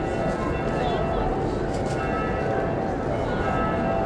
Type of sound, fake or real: real